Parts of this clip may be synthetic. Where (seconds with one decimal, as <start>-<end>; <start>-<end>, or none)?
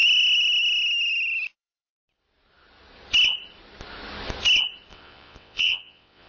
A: 4.9-6.3